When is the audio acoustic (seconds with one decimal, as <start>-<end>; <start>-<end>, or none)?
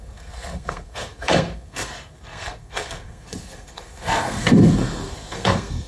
none